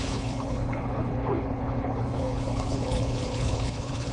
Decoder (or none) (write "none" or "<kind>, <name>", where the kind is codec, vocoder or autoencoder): codec, HILCodec